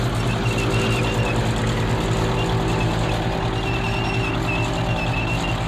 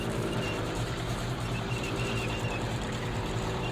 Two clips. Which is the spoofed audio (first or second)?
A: second